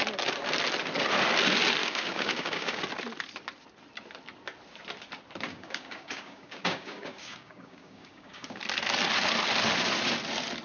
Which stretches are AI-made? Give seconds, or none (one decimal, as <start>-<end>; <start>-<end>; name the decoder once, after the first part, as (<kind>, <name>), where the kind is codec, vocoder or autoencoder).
1.8-2.8 (codec, DAC); 5.5-8.6